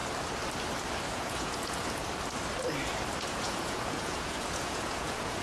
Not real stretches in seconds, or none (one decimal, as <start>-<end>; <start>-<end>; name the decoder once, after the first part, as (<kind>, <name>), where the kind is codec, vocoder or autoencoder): 1.1-2.0 (vocoder, Vocos); 3.3-5.4